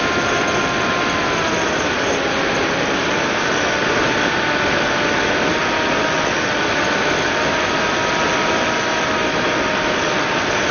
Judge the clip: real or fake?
real